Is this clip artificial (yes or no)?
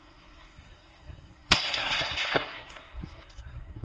yes